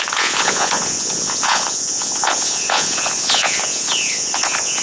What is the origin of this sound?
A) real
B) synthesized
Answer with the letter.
B